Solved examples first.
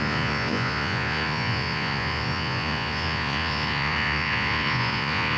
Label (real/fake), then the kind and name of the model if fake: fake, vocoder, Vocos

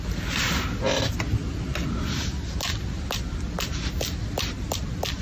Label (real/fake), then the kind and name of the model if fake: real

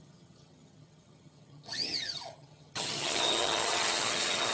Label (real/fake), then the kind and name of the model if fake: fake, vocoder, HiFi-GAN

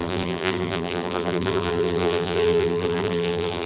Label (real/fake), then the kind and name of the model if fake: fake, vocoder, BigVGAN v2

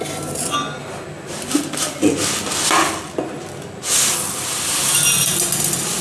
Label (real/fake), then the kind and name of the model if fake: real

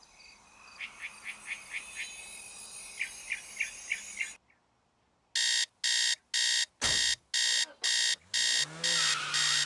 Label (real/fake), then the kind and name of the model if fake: real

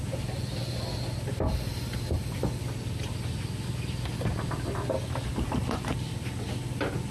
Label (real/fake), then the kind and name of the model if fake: real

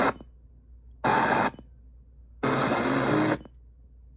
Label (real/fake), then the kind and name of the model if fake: real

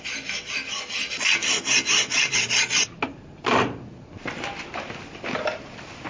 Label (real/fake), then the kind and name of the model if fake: real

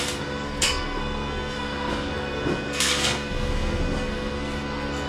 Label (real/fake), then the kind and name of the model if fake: fake, codec, SNAC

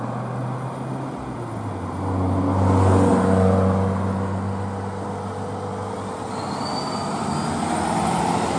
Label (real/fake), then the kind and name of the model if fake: real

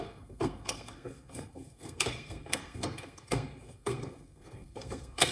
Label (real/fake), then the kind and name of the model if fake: fake, codec, SNAC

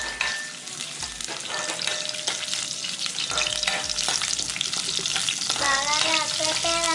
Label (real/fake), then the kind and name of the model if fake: real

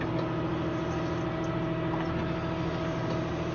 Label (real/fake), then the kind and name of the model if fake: real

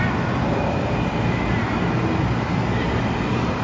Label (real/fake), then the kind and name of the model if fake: real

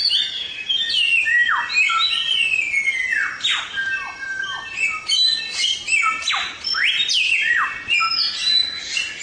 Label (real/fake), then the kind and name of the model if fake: real